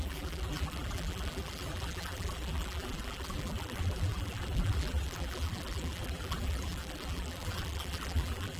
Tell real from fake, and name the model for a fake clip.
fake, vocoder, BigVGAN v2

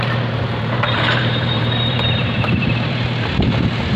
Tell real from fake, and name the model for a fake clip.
fake, vocoder, BigVGAN v2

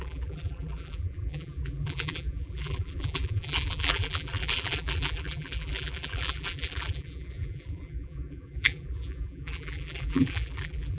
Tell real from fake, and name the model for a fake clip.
fake, vocoder, BigVGAN v2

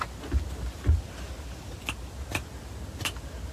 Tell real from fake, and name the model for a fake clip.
real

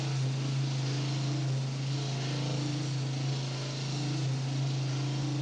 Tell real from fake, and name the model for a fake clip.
real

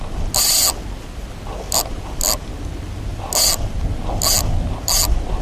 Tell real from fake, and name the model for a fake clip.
real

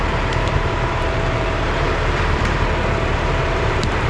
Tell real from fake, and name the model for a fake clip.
fake, vocoder, BigVGAN v2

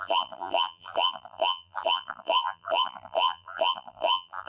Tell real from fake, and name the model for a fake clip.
fake, vocoder, BigVGAN v2